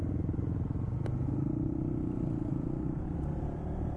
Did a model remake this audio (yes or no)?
no